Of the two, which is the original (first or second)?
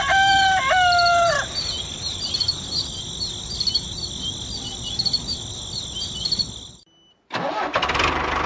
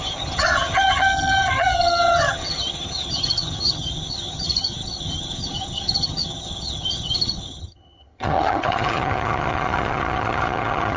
first